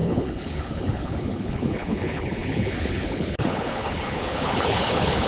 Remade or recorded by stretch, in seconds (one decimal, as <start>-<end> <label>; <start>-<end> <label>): 0.0-5.3 remade